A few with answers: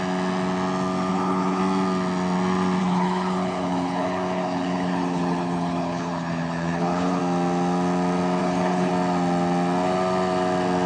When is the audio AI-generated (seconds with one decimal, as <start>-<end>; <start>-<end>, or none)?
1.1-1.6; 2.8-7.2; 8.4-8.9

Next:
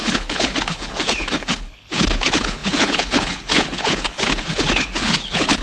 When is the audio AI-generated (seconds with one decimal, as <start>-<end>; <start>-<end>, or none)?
0.0-5.6

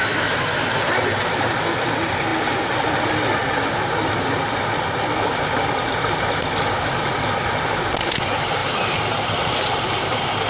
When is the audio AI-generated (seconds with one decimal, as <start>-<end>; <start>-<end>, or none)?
8.6-10.5

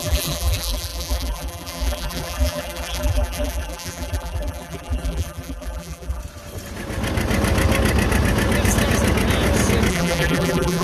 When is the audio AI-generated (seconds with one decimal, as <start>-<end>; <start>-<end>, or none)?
0.0-6.2; 9.9-10.8

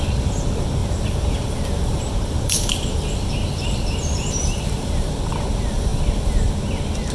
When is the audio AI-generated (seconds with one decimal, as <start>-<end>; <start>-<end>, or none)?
0.8-5.1

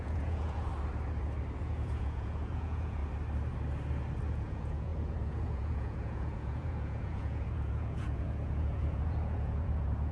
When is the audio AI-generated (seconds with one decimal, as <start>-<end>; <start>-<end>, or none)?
0.0-0.7; 1.6-3.0; 4.3-10.1

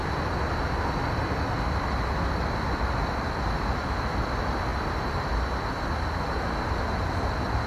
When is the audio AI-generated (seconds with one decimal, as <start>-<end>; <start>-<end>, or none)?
none

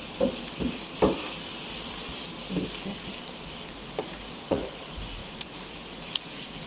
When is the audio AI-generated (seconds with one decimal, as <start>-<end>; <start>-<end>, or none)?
4.0-6.7